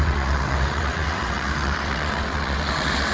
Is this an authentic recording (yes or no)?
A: no